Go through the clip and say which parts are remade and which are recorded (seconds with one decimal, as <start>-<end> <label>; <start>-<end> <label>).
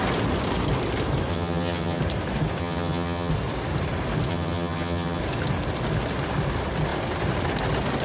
0.0-1.3 recorded; 1.3-2.0 remade; 2.0-2.6 recorded; 2.6-3.3 remade; 3.3-4.3 recorded; 4.3-5.2 remade; 5.2-8.0 recorded